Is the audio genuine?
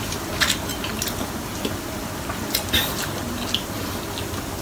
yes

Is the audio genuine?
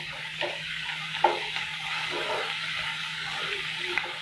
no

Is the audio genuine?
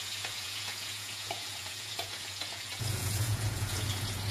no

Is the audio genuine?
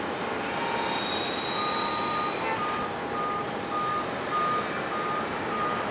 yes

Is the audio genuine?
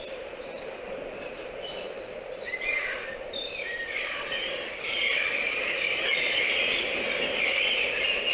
no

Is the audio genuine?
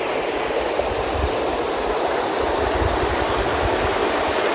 yes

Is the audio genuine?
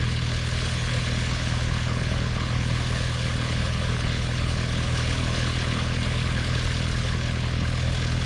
no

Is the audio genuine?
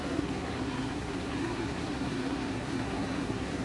no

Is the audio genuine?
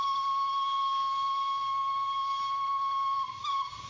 yes